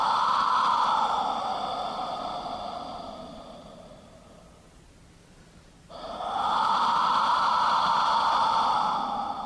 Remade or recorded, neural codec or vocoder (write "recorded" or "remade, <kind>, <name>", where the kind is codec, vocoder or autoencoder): recorded